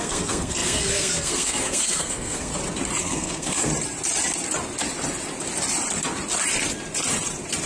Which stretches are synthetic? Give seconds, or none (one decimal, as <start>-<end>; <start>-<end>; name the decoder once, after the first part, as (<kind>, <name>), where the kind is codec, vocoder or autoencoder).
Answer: 0.0-2.5 (codec, SNAC); 3.0-3.7